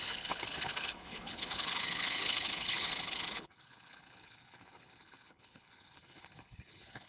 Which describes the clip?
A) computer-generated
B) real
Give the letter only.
A